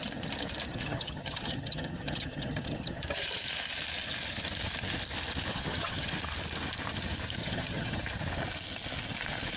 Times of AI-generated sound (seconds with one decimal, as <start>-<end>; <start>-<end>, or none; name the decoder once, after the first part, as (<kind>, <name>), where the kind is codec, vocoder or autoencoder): 0.7-3.0 (vocoder, HiFi-GAN); 5.5-6.1; 7.4-8.0